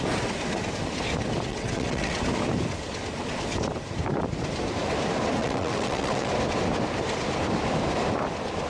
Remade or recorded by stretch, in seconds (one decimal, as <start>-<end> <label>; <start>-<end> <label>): 0.0-1.5 recorded; 1.5-2.2 remade; 2.2-5.4 recorded; 5.4-6.3 remade; 6.3-8.7 recorded